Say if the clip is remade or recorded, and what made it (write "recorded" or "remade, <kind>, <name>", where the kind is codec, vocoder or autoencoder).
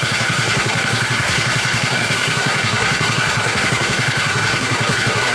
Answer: remade, codec, SNAC